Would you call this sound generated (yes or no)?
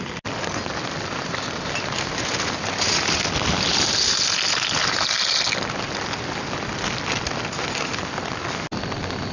no